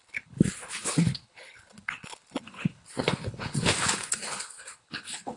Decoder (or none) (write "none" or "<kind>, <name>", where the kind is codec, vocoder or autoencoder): codec, HILCodec